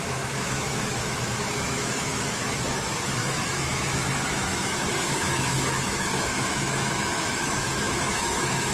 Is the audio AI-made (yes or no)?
yes